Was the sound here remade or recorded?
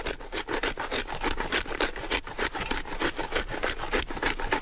recorded